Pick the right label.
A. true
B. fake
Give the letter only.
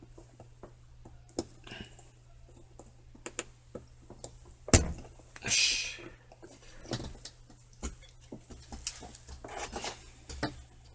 A